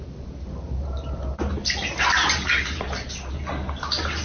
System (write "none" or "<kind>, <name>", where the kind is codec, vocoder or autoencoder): none